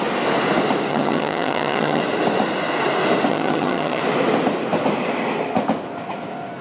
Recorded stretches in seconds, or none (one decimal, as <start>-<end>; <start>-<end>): 0.0-0.9; 2.0-3.3; 4.0-6.6